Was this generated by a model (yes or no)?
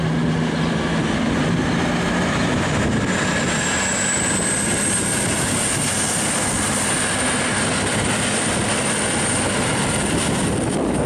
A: no